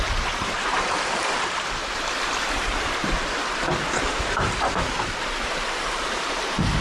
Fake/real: fake